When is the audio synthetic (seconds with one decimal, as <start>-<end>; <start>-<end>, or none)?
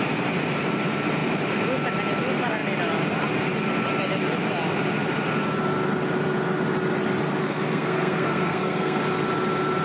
7.4-9.0